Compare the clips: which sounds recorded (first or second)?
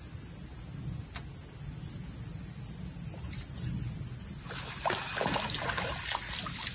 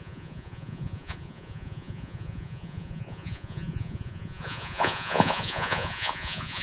first